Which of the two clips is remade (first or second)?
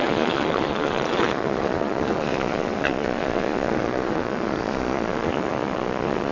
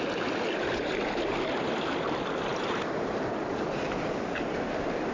first